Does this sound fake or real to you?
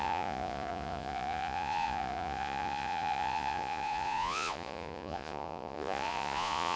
fake